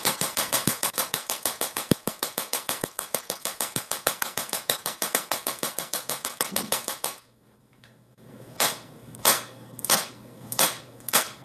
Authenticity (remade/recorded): remade